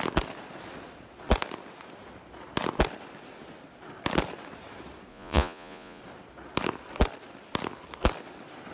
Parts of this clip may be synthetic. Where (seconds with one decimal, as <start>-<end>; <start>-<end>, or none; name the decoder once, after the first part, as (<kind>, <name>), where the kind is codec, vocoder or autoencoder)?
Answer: 5.1-6.0 (vocoder, Vocos)